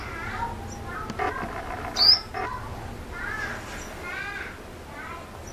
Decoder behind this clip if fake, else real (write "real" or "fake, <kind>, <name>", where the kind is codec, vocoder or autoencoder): real